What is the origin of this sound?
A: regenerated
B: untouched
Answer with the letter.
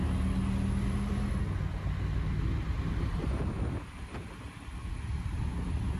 B